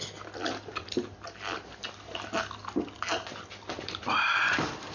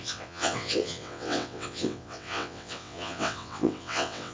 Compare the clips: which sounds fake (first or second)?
second